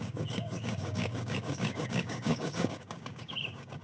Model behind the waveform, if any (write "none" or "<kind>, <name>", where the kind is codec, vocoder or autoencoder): codec, DAC